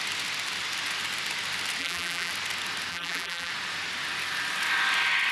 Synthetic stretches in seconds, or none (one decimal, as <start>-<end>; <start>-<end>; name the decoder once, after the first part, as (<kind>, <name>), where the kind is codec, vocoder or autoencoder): 1.8-2.3 (vocoder, BigVGAN v2); 2.9-3.5